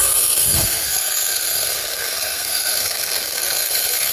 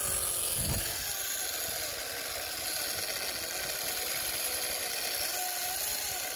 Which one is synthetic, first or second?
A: first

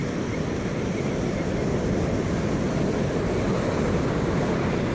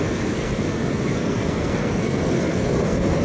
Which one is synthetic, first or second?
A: second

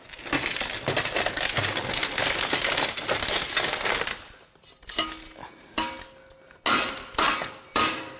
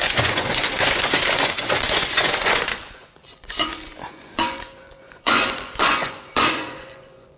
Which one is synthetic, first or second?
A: second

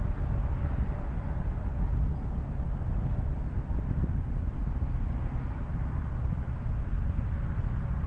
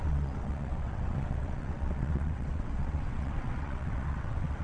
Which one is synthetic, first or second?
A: second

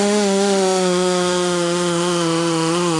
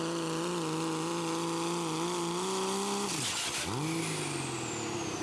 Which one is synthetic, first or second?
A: first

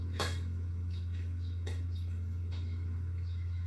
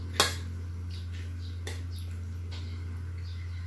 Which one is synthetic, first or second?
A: first